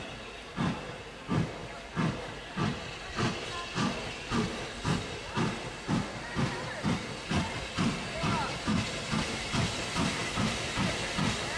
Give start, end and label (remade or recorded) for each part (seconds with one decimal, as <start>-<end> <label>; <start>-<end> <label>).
0.0-1.6 recorded; 1.6-5.9 remade; 5.9-10.2 recorded; 10.2-10.8 remade; 10.8-11.6 recorded